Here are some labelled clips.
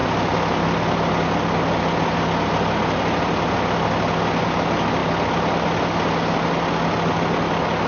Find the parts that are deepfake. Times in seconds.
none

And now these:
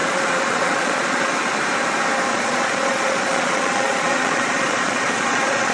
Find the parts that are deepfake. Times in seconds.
0.0-1.3 (vocoder, Vocos); 2.3-5.7

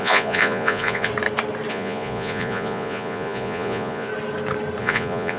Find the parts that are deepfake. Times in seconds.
0.0-1.1 (vocoder, Vocos); 1.7-4.1; 4.8-5.4

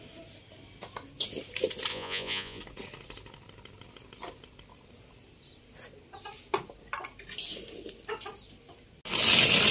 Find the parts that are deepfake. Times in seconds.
1.9-2.6 (vocoder, Vocos)

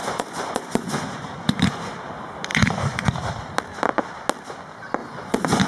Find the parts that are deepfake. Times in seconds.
0.0-1.9 (vocoder, Vocos); 2.5-3.1; 5.0-5.7

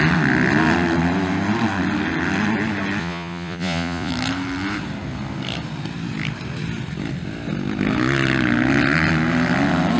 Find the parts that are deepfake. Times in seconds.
3.0-4.1 (vocoder, Vocos)

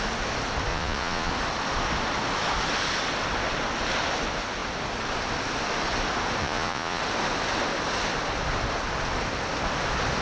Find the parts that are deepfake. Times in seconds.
0.7-1.3 (vocoder, Vocos); 6.4-7.0